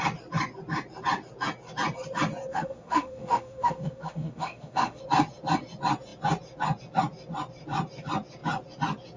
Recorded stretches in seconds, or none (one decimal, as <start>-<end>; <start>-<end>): 0.0-2.5; 5.0-9.2